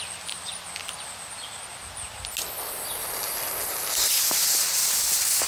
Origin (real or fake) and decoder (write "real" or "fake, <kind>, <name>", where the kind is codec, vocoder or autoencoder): real